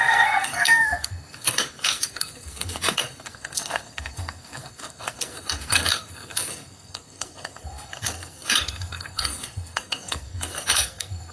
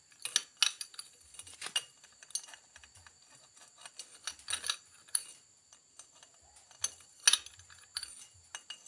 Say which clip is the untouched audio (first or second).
second